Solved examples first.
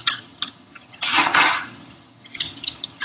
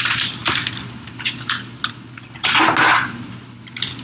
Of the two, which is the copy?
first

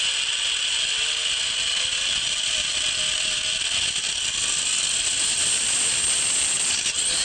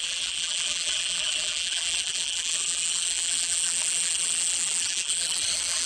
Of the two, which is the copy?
second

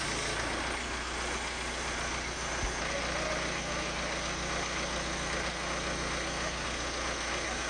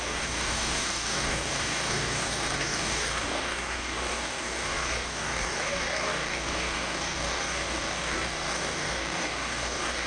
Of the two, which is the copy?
second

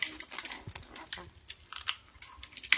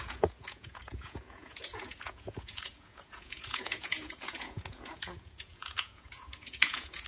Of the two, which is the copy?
second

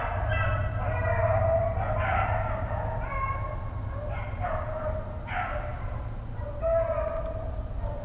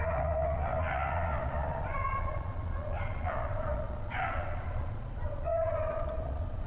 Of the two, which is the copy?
second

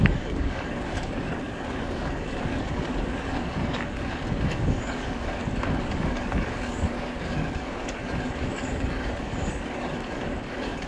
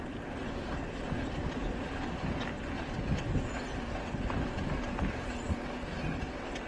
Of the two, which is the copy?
first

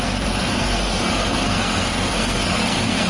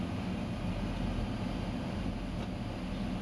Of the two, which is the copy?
first